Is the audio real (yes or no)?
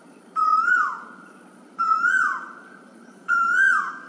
no